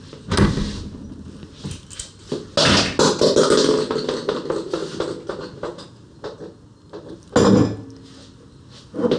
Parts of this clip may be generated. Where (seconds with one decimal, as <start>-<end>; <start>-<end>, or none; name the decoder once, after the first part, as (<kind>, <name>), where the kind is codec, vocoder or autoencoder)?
none